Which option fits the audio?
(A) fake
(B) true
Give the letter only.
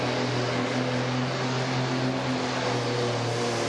B